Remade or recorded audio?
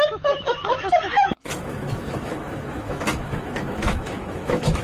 remade